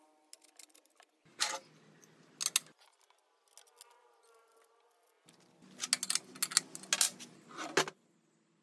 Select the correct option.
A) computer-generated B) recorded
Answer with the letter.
B